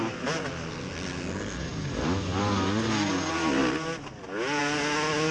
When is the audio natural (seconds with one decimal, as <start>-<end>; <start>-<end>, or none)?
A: 0.0-5.3